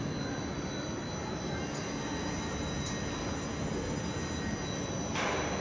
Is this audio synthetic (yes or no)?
no